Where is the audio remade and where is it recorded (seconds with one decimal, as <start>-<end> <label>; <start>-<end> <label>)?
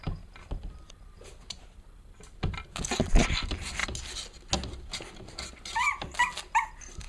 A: 0.0-7.1 recorded